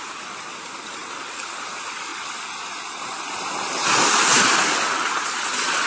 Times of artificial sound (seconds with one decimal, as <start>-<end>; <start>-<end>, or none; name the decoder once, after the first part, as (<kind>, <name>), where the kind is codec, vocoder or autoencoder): none